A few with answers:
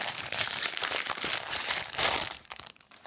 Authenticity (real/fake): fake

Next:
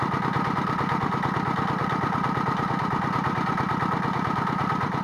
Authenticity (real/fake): real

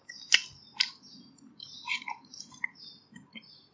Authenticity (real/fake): fake